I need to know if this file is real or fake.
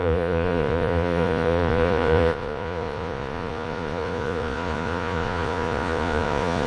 fake